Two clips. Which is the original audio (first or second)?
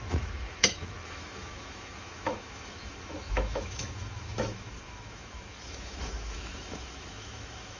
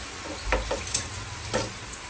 second